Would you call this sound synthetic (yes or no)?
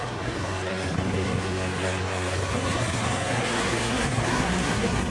yes